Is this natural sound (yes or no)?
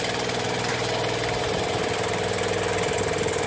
yes